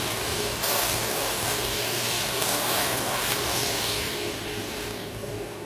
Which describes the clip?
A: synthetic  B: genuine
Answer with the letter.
A